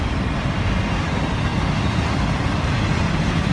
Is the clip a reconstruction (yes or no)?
no